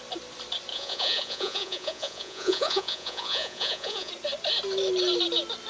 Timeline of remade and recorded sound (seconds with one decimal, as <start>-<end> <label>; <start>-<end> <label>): 0.0-0.7 recorded; 0.7-4.1 remade; 4.1-5.7 recorded